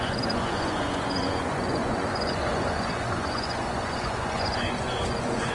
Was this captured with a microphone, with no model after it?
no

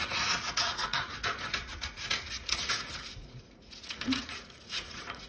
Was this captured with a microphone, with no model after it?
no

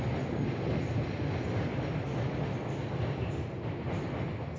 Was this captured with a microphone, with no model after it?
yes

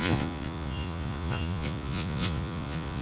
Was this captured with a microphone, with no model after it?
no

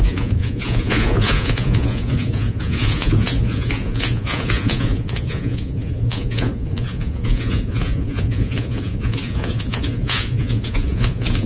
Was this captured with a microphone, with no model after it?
no